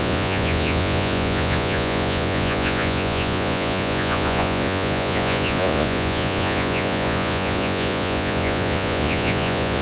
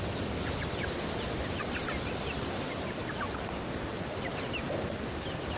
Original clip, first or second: second